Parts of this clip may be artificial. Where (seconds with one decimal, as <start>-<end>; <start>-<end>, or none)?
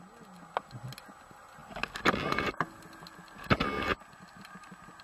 none